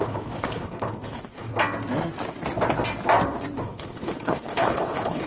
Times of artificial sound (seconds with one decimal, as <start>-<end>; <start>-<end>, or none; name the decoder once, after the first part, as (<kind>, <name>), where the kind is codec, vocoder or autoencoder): 0.0-1.5 (codec, HILCodec); 3.6-5.3